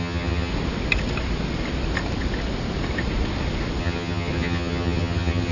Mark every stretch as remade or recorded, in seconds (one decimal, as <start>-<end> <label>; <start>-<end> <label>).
0.0-0.5 remade; 0.5-3.8 recorded; 3.8-5.5 remade